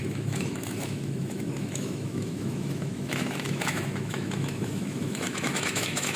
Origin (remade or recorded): remade